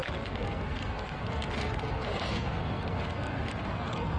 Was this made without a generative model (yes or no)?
no